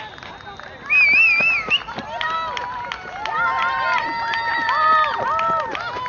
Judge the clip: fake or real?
real